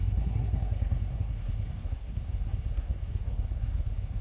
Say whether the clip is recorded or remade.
remade